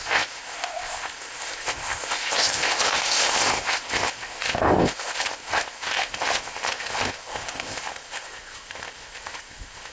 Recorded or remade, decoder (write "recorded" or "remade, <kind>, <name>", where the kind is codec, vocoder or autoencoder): remade, codec, ZipCodec